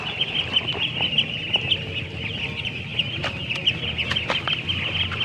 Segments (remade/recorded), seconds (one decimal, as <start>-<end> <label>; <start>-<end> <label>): 0.0-5.2 recorded